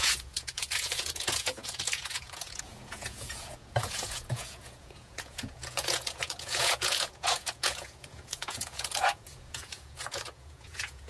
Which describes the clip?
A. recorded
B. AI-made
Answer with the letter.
B